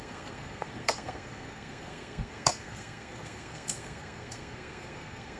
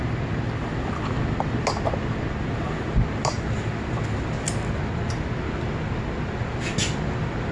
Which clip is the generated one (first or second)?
first